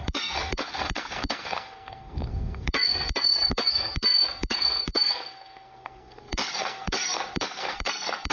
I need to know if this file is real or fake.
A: fake